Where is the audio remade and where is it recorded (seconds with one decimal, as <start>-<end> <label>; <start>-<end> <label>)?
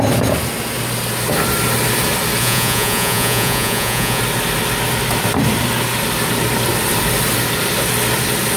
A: 0.0-2.4 recorded; 2.4-4.2 remade; 4.2-8.6 recorded